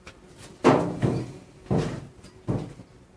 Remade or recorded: recorded